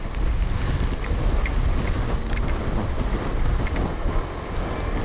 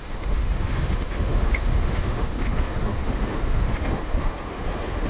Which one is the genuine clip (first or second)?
first